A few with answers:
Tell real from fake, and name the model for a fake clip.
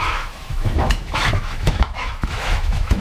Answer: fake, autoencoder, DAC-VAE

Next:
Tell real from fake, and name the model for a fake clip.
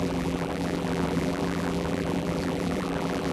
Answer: fake, vocoder, BigVGAN v2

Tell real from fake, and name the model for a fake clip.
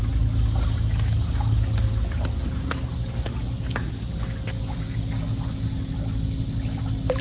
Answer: real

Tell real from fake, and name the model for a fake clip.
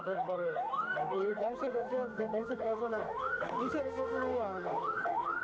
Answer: fake, codec, SNAC